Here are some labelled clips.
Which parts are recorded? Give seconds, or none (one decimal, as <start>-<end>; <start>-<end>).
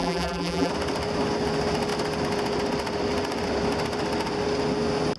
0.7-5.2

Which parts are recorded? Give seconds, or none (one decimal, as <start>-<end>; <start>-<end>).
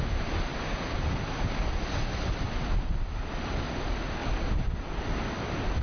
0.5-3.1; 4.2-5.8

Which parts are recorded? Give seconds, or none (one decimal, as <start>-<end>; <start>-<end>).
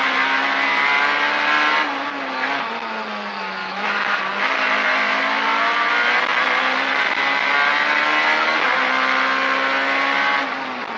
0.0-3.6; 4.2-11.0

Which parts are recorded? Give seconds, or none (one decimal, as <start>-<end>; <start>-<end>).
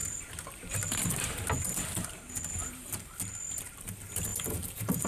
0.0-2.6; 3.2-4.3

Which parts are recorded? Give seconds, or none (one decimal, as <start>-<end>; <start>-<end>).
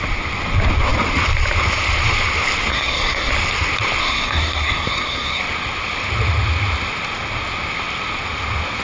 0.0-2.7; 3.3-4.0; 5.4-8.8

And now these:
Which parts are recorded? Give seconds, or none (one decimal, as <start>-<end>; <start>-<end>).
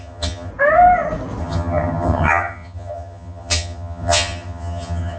0.5-1.4